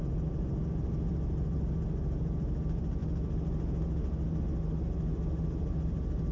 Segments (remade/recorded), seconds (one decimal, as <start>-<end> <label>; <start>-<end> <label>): 0.0-6.3 recorded